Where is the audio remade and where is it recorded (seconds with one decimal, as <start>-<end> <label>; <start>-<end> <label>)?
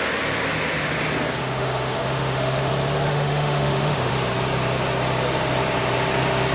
0.0-1.4 recorded; 1.4-2.7 remade; 2.7-3.1 recorded; 3.1-4.1 remade; 4.1-6.5 recorded